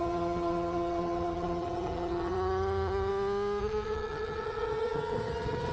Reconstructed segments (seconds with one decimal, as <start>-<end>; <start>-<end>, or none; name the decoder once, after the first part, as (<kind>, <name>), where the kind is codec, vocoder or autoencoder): 0.0-3.1 (vocoder, HiFi-GAN); 3.6-5.7